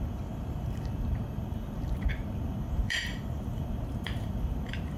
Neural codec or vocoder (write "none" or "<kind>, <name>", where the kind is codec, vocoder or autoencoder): vocoder, BigVGAN v2